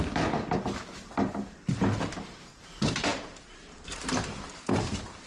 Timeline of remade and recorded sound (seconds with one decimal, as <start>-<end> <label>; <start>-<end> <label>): 0.0-5.3 remade